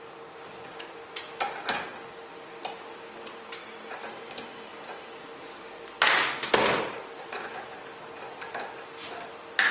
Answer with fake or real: real